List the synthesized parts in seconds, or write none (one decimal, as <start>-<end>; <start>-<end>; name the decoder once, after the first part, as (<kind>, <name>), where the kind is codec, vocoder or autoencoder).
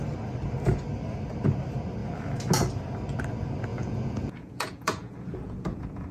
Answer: 3.7-6.1 (vocoder, Vocos)